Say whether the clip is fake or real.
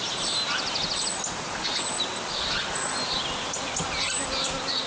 real